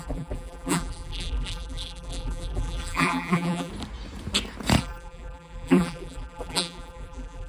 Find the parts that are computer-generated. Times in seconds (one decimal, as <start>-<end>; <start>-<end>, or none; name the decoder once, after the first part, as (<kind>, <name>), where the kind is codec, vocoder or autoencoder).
0.0-3.7 (vocoder, BigVGAN v2); 4.8-7.5